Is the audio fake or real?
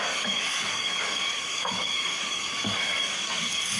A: fake